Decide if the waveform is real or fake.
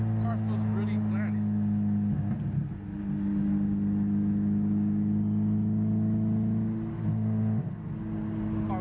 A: real